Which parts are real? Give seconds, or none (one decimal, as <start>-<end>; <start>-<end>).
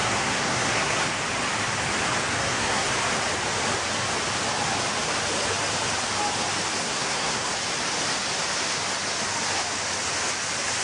1.0-2.4; 2.9-6.8; 7.5-10.8